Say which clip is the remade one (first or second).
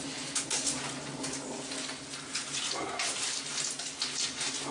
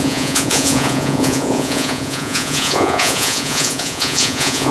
second